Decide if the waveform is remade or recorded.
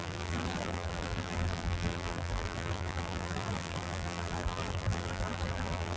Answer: remade